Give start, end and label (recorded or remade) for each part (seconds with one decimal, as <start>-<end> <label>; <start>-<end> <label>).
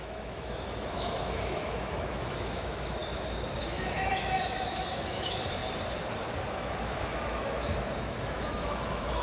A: 0.0-3.0 remade; 3.0-3.6 recorded; 3.6-5.6 remade; 5.6-6.5 recorded; 6.5-9.2 remade